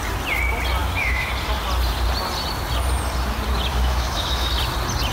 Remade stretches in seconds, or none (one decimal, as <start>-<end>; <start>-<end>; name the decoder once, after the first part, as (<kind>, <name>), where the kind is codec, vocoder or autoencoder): 0.8-1.3 (autoencoder, DAC-VAE); 3.7-4.5